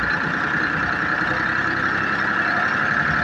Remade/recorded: recorded